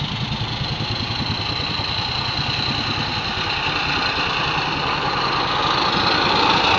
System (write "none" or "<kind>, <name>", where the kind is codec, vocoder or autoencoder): none